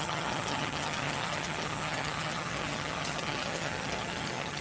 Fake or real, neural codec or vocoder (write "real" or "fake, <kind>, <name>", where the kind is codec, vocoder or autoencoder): fake, vocoder, HiFi-GAN